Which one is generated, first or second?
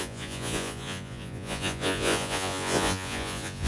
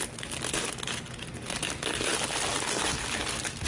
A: first